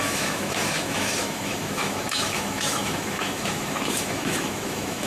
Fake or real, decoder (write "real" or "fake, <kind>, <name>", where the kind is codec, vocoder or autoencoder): fake, autoencoder, DAC-VAE